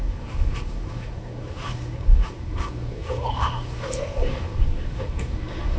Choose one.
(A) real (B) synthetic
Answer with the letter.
B